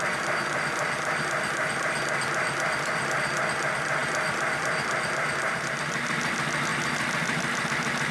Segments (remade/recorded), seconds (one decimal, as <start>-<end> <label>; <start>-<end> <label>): 0.0-8.1 recorded